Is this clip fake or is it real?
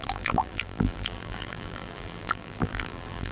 fake